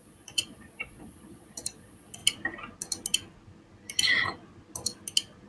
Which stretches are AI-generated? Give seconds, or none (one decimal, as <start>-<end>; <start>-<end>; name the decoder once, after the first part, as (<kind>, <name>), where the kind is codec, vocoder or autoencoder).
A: 0.0-2.2 (vocoder, Vocos)